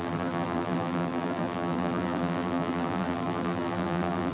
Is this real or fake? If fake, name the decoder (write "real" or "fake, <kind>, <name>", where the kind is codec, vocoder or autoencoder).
fake, vocoder, BigVGAN v2